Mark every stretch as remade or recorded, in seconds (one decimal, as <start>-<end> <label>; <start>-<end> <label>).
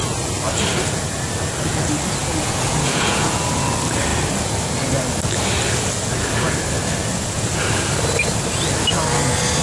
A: 0.0-2.2 recorded; 2.2-3.4 remade; 3.4-7.0 recorded; 7.0-7.5 remade; 7.5-9.6 recorded